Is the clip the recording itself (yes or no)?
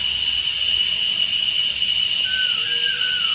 yes